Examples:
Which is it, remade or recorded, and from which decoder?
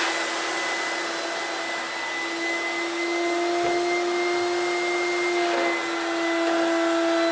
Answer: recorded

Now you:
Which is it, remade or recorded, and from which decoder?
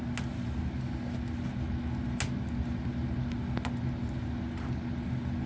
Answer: recorded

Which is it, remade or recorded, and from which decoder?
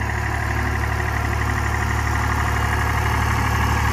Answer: recorded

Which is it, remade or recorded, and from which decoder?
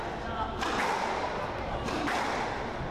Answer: recorded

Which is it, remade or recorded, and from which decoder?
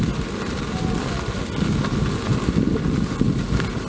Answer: recorded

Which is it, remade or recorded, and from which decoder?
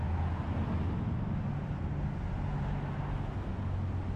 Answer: recorded